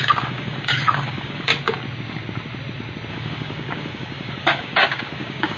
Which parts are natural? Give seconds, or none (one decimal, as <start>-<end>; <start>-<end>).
1.5-3.1